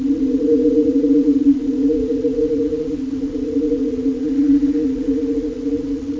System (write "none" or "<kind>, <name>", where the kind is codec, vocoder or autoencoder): vocoder, Vocos